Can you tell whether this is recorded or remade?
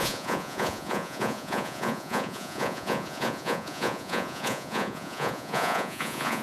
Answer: remade